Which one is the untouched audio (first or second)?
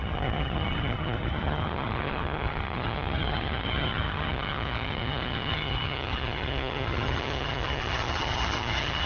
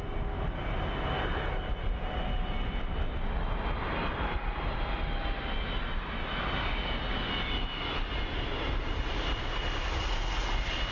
second